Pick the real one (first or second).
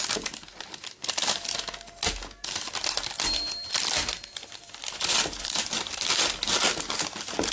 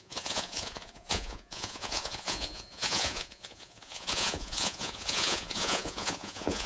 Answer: first